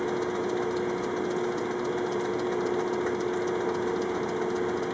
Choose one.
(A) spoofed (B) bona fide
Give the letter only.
B